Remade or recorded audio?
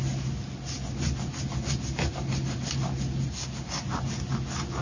recorded